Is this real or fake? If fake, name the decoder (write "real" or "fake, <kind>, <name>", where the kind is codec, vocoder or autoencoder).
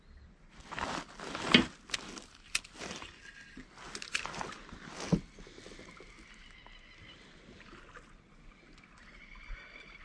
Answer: real